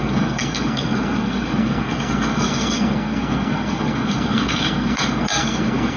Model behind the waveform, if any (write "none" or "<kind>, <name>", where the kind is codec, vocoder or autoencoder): codec, SNAC